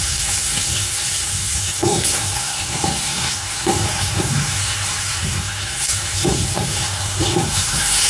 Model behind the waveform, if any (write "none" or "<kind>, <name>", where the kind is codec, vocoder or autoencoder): codec, SNAC